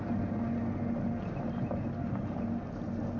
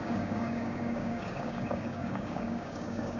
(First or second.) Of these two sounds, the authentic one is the first